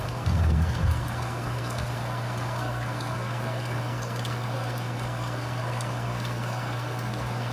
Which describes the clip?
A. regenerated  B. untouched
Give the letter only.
A